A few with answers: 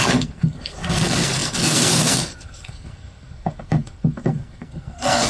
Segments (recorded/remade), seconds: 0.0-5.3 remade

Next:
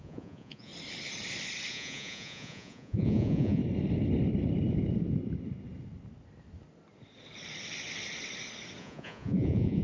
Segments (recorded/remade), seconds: 0.0-0.7 remade; 0.7-1.7 recorded; 1.7-3.6 remade; 3.6-8.8 recorded; 8.8-9.8 remade

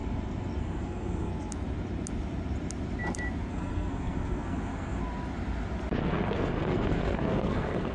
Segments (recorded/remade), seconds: 0.0-0.6 recorded; 0.6-1.3 remade; 1.3-3.5 recorded; 3.5-5.0 remade; 5.0-6.0 recorded; 6.0-7.9 remade

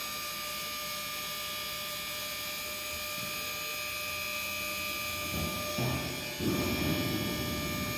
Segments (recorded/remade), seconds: 0.0-8.0 recorded

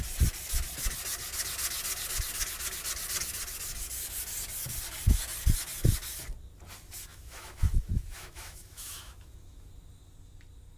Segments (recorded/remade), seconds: 0.0-7.1 recorded; 7.1-9.7 remade; 9.7-10.8 recorded